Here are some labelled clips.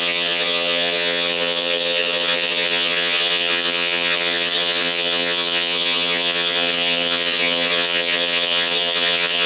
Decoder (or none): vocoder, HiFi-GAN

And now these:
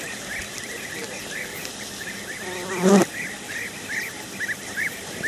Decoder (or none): none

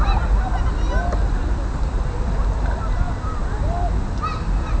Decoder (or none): none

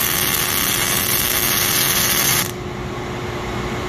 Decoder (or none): none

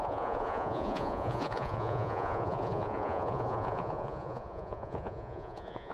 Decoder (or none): vocoder, Vocos